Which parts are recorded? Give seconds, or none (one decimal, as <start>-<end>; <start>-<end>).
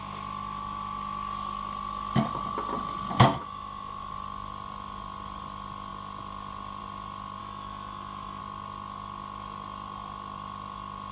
0.0-3.3; 4.1-7.4; 8.4-11.1